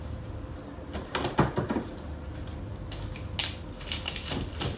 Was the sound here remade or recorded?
recorded